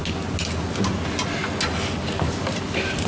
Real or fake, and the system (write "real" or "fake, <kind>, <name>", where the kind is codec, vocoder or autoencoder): real